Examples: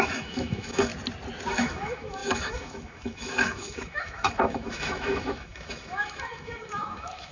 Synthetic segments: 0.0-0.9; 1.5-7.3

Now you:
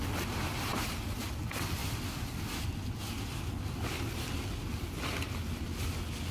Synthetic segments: none